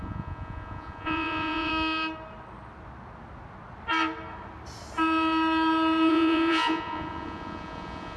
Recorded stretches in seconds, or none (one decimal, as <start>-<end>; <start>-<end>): 1.7-6.1

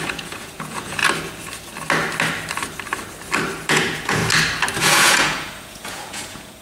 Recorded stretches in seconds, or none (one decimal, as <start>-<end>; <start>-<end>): 1.0-3.7; 4.2-4.8